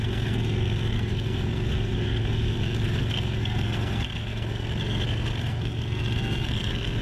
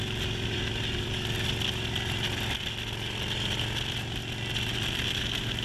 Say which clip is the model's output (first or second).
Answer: first